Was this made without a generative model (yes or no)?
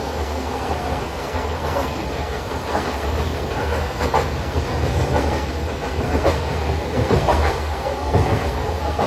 no